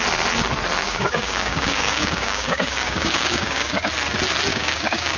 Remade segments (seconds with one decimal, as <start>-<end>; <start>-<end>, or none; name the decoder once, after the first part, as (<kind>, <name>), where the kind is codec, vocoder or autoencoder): 0.8-3.9 (codec, DAC); 4.5-5.2